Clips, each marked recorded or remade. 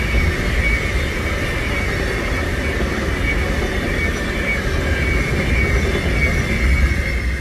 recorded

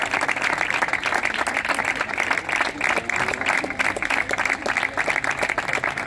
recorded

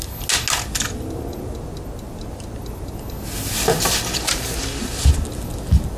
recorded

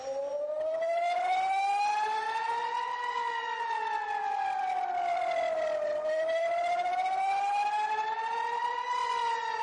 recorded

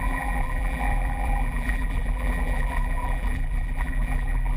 remade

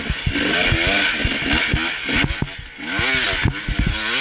recorded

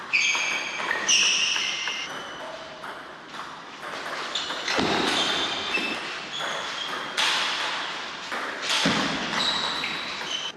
recorded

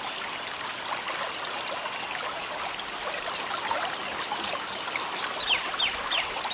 recorded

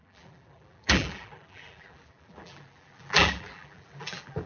remade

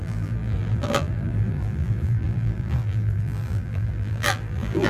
remade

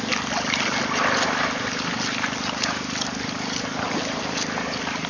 recorded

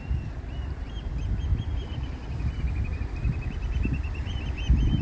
recorded